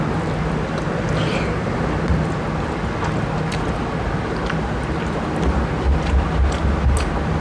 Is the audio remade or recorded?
recorded